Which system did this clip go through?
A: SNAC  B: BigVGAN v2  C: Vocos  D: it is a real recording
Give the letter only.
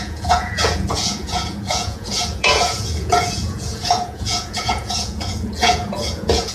C